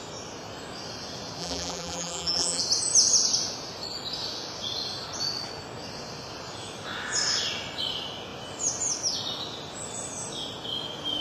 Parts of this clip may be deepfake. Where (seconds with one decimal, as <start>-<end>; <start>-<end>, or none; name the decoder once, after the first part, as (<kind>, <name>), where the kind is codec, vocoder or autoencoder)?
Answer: 1.4-2.6 (vocoder, BigVGAN v2)